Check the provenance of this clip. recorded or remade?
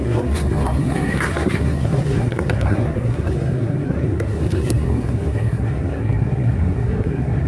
remade